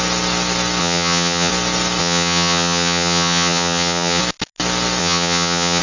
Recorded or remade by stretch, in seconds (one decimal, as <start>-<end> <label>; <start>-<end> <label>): 0.0-0.8 recorded; 0.8-1.5 remade; 1.5-2.0 recorded; 2.0-4.2 remade; 4.2-5.0 recorded; 5.0-5.8 remade